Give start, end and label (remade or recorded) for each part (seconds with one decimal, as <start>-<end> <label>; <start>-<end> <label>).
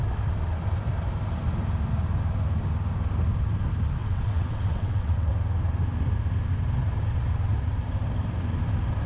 0.0-4.0 recorded; 4.0-5.3 remade; 5.3-9.1 recorded